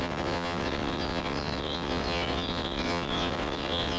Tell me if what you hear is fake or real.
fake